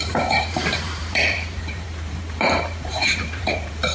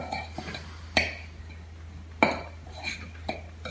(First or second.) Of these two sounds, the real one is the second